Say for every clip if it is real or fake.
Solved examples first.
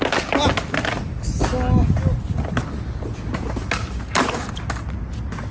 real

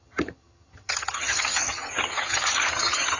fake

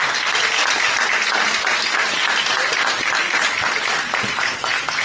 real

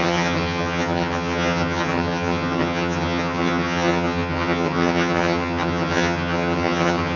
fake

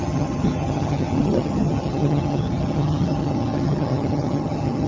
fake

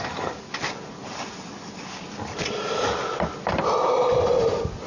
real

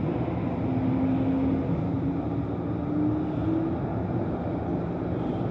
real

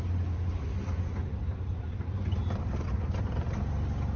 real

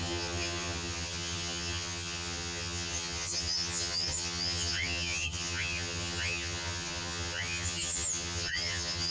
fake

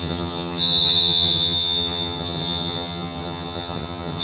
fake